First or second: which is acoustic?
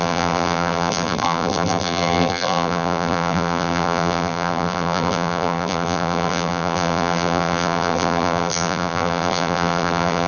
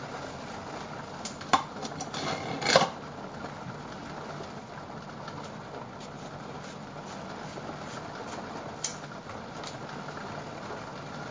second